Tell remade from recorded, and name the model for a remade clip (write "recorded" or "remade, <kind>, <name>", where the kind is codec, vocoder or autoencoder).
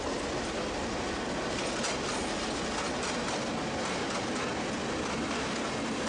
recorded